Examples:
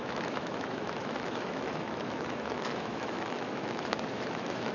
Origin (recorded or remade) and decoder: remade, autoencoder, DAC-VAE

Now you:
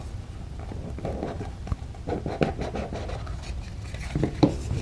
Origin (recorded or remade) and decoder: recorded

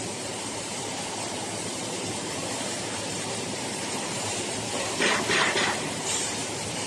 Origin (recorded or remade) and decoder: remade, vocoder, BigVGAN v2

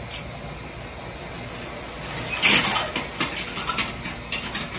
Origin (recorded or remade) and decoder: recorded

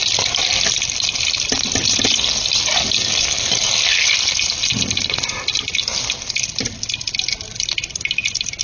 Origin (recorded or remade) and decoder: recorded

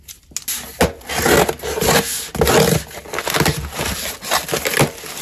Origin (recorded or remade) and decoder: recorded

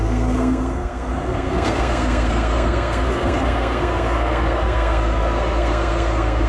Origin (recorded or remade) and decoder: remade, codec, SNAC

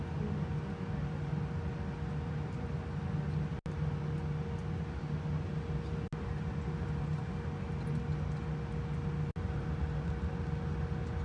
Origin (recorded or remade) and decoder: recorded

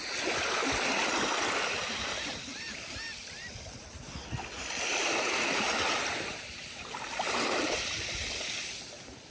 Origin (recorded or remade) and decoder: recorded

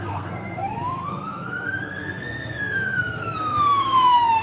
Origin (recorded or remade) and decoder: remade, codec, SNAC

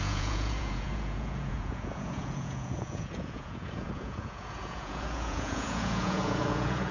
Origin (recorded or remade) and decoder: remade, vocoder, Vocos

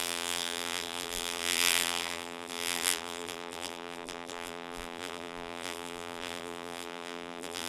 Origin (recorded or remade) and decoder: remade, vocoder, BigVGAN v2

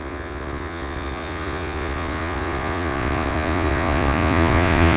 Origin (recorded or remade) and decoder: remade, vocoder, Vocos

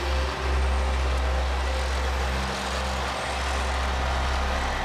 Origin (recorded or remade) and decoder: recorded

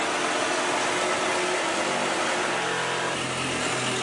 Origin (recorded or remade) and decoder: recorded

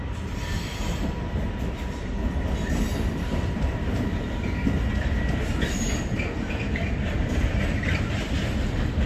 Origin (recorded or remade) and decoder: recorded